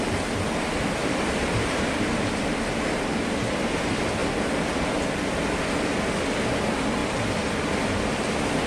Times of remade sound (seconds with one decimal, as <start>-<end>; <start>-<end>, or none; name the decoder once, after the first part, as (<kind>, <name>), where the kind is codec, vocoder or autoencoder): 1.0-1.7 (vocoder, BigVGAN v2)